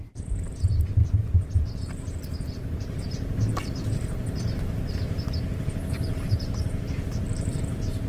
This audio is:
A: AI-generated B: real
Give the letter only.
A